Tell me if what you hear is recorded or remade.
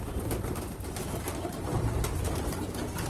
recorded